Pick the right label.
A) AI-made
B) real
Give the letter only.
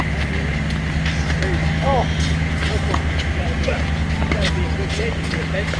B